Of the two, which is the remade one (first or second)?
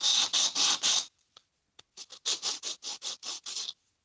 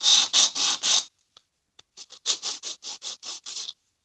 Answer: second